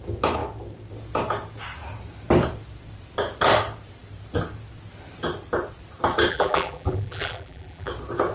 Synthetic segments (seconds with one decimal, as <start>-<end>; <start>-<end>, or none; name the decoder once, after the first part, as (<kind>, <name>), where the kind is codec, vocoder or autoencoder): 6.3-7.9 (vocoder, BigVGAN v2)